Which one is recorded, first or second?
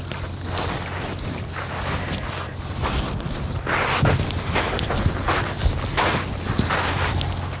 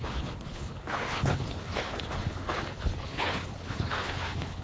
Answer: first